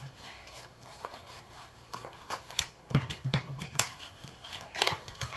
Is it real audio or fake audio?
fake